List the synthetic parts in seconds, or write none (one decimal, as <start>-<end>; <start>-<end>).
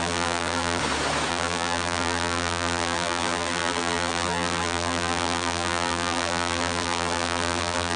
0.0-0.8; 1.3-8.0